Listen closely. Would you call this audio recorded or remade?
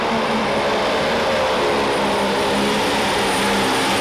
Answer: recorded